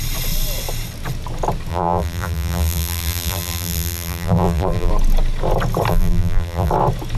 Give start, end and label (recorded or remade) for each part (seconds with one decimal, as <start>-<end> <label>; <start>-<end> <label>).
0.0-1.7 recorded; 1.7-4.9 remade; 4.9-5.9 recorded; 5.9-6.7 remade; 6.7-7.2 recorded